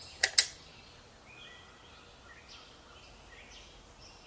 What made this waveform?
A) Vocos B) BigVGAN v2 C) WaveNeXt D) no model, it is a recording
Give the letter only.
D